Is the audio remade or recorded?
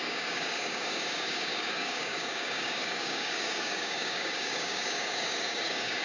remade